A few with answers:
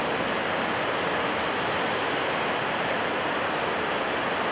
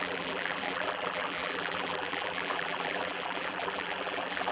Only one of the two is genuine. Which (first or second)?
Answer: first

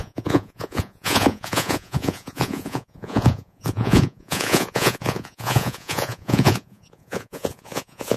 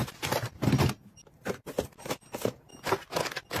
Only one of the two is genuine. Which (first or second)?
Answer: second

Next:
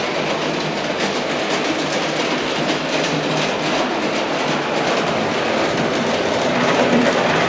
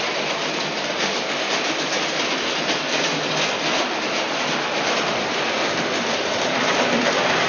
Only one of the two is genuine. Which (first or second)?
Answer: first